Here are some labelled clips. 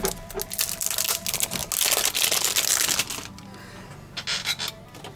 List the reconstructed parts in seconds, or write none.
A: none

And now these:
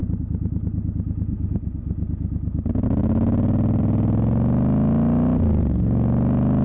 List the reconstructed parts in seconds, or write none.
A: none